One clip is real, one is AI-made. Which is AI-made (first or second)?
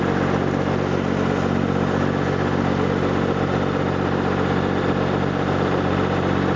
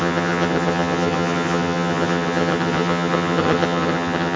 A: second